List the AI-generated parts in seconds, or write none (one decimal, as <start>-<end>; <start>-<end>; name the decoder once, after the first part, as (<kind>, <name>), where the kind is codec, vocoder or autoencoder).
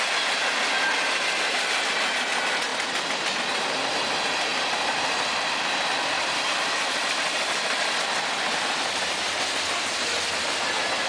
4.5-8.3 (vocoder, BigVGAN v2)